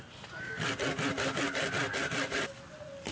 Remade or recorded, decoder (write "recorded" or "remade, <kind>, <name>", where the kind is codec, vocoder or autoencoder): recorded